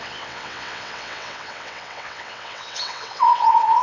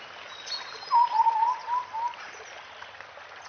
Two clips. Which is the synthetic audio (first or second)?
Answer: first